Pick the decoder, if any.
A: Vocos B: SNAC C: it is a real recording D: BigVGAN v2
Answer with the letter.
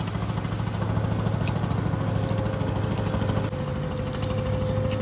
C